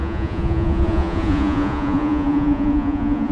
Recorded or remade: remade